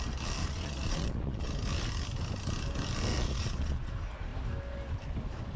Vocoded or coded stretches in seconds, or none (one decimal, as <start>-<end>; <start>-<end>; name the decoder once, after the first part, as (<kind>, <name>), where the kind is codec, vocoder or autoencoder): 0.4-1.5 (vocoder, Vocos); 3.1-3.9